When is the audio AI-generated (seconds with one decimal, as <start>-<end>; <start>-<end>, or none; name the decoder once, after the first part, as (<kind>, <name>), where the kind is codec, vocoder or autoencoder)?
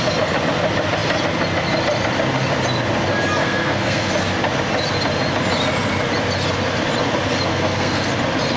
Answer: 3.4-4.1 (codec, SNAC); 7.5-8.1